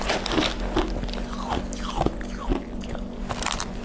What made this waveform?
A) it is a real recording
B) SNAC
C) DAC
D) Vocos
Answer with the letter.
A